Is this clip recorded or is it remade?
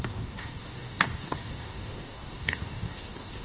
remade